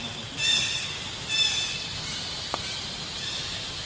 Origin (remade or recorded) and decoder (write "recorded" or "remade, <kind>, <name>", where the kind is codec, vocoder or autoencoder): recorded